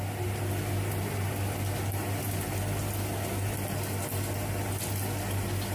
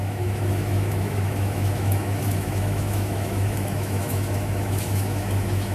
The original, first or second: first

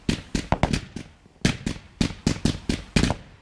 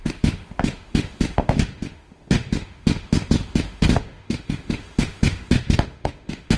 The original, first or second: first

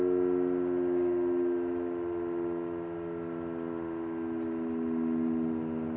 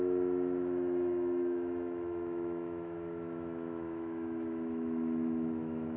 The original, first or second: first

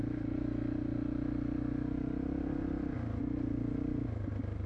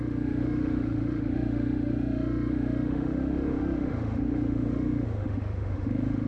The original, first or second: first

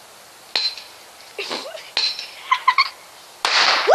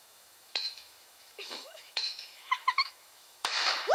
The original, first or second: first